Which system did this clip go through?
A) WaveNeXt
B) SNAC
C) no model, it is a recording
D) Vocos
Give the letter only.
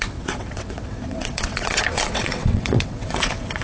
A